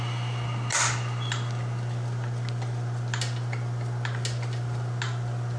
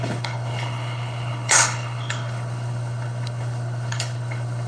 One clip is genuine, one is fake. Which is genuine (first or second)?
first